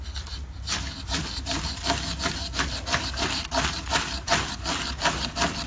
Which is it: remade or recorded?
recorded